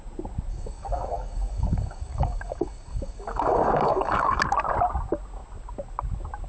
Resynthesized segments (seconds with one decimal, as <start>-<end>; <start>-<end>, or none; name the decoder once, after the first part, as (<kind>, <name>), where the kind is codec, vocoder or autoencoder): 0.5-4.4 (codec, DAC)